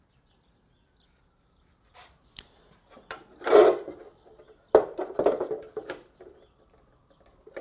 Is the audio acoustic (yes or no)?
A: no